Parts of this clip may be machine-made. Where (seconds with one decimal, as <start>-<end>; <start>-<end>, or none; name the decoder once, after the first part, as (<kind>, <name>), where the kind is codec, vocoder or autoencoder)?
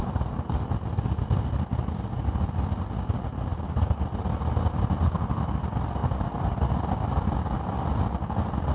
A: none